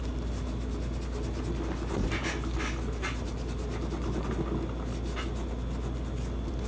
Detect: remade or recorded recorded